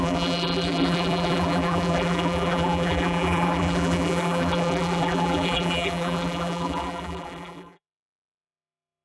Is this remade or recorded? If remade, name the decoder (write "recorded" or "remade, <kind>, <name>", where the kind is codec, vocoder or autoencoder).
remade, vocoder, BigVGAN v2